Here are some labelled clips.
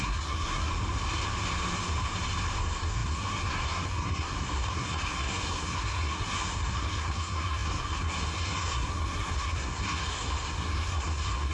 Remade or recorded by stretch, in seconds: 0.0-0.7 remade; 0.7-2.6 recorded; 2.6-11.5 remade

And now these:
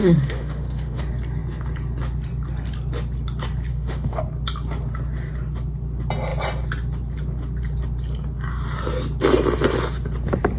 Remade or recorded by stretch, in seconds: 0.0-1.0 remade; 1.0-3.7 recorded; 3.7-4.2 remade; 4.2-10.6 recorded

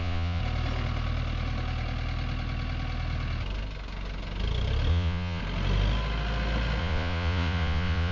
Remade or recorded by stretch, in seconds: 0.0-0.4 remade; 0.4-4.9 recorded; 4.9-5.4 remade; 5.4-6.8 recorded; 6.8-8.1 remade

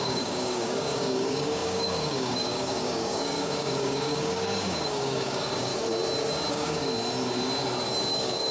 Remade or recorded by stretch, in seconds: 0.0-5.7 remade; 5.7-6.5 recorded; 6.5-6.9 remade; 6.9-8.1 recorded; 8.1-8.5 remade

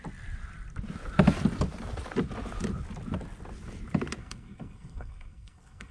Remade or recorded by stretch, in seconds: 0.0-4.2 recorded; 4.2-5.9 remade

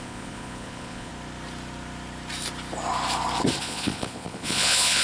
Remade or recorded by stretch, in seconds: 0.0-1.1 remade; 1.1-3.6 recorded; 3.6-5.0 remade

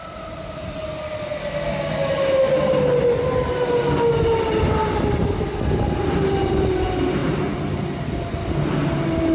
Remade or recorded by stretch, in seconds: 0.0-9.3 recorded

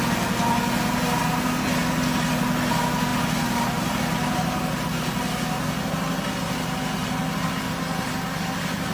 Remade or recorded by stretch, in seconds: 0.0-8.9 recorded